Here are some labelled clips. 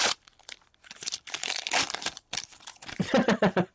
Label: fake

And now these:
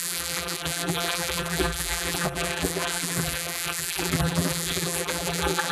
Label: fake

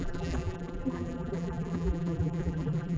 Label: fake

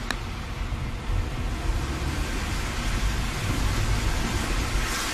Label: real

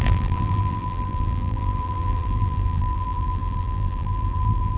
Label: fake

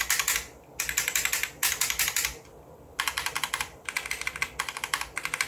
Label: fake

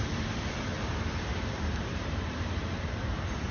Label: fake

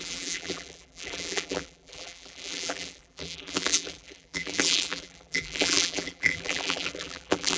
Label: fake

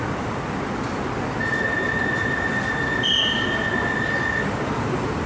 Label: real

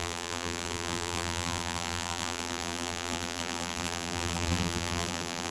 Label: fake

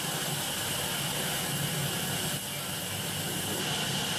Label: real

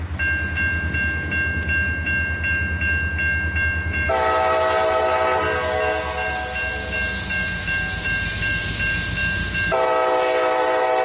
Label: real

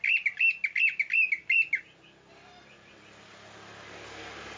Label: real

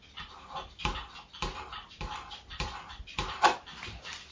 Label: real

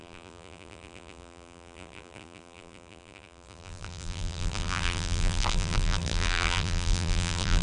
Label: fake